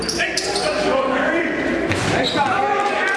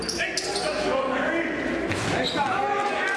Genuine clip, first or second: second